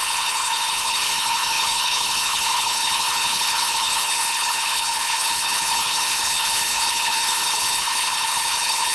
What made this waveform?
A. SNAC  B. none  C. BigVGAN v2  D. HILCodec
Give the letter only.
D